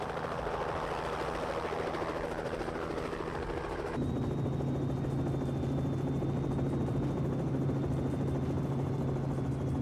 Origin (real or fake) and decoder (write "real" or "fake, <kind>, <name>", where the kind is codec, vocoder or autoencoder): real